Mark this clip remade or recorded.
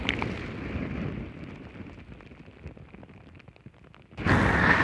recorded